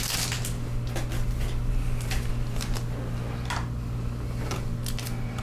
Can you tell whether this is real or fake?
real